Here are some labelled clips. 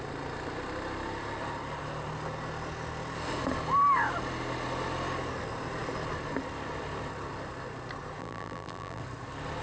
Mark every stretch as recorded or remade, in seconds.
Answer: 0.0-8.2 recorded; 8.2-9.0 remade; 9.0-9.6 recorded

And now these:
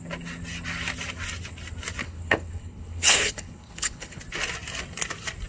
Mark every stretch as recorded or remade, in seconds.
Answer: 0.0-2.0 recorded; 2.0-4.2 remade; 4.2-5.5 recorded

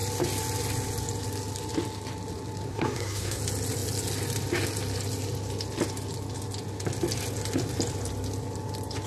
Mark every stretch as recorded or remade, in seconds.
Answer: 0.0-2.7 recorded; 2.7-3.4 remade; 3.4-9.1 recorded

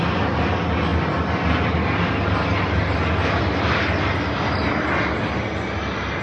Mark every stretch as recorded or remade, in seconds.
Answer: 0.0-6.2 recorded

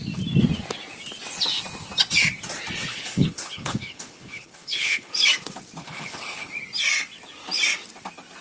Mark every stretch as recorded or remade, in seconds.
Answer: 0.0-2.9 recorded; 2.9-5.1 remade; 5.1-5.8 recorded; 5.8-6.5 remade; 6.5-8.4 recorded